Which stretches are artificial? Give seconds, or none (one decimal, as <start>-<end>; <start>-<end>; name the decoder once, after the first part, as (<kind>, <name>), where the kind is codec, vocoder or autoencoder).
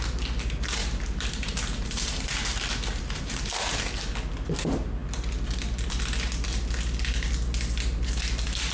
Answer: 0.8-3.8 (vocoder, BigVGAN v2)